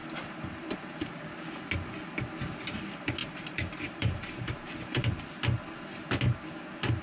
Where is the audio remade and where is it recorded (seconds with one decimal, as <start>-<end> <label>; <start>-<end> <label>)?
0.0-1.2 remade; 1.2-3.2 recorded; 3.2-5.4 remade; 5.4-7.0 recorded